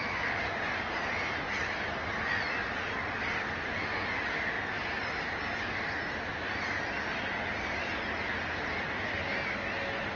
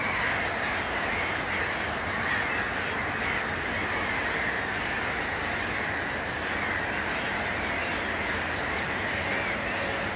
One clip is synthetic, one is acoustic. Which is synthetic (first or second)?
second